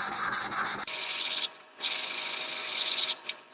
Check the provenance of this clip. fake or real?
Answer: fake